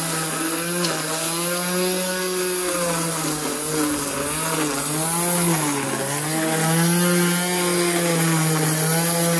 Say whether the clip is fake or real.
real